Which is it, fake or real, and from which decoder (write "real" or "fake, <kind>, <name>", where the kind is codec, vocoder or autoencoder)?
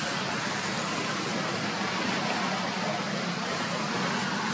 real